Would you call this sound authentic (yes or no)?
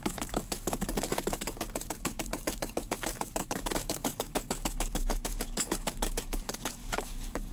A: no